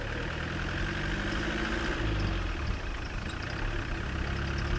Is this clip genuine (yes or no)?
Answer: yes